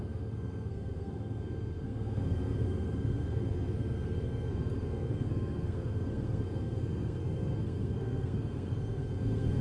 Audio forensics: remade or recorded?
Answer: remade